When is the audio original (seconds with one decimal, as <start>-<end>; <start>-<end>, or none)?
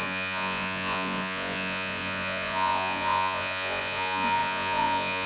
none